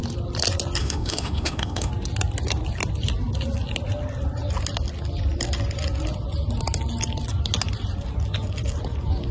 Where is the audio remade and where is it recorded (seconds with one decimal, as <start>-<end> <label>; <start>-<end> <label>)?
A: 0.0-0.8 recorded; 0.8-1.9 remade; 1.9-9.3 recorded